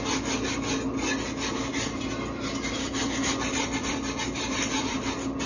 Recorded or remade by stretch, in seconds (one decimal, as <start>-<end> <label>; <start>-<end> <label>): 0.0-1.7 recorded; 1.7-5.0 remade; 5.0-5.5 recorded